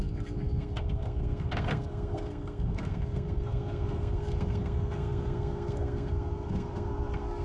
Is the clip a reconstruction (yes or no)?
yes